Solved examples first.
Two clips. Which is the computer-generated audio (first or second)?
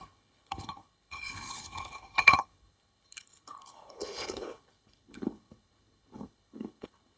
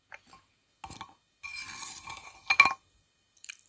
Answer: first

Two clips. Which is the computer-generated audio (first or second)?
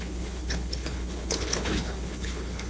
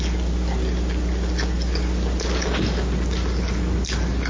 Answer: first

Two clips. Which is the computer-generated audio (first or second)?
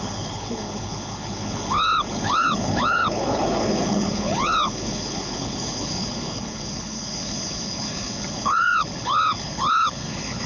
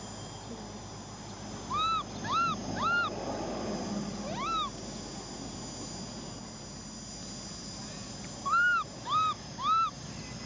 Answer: first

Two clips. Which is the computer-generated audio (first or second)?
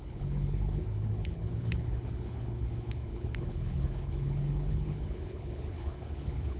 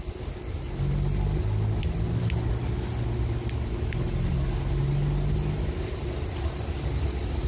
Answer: first